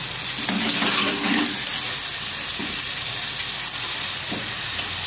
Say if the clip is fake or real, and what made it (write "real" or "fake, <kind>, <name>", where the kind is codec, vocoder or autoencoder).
real